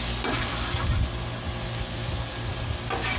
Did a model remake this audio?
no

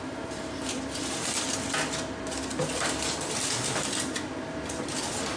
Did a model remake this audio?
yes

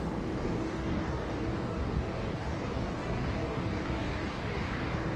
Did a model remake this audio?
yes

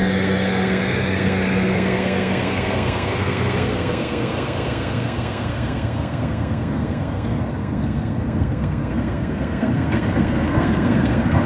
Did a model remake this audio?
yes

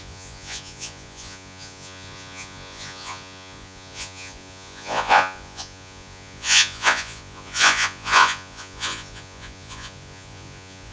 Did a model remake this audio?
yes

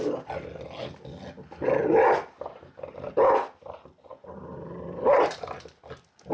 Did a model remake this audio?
no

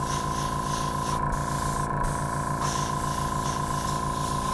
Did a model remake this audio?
no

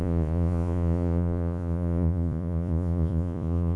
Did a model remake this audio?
yes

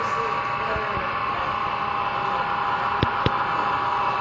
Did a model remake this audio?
no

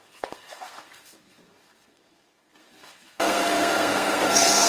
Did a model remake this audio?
yes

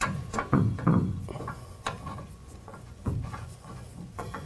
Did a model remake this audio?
yes